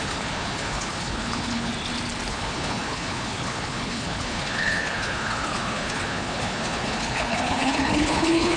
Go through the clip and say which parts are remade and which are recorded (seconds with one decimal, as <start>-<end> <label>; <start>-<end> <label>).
0.0-1.7 remade; 1.7-2.3 recorded; 2.3-8.6 remade